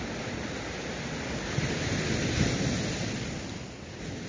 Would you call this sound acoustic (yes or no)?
yes